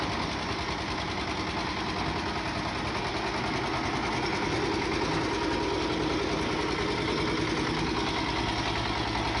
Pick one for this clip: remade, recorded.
recorded